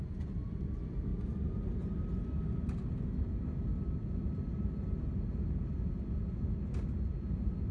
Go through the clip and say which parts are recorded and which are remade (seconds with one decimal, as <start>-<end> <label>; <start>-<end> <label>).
0.0-1.1 recorded; 1.1-2.6 remade; 2.6-4.5 recorded; 4.5-5.7 remade; 5.7-7.7 recorded